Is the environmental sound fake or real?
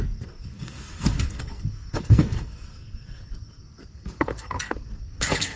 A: fake